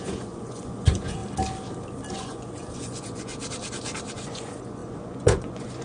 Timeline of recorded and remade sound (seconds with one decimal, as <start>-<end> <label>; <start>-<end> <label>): 0.0-1.2 remade; 1.2-2.1 recorded; 2.1-3.3 remade; 3.3-4.1 recorded; 4.1-5.8 remade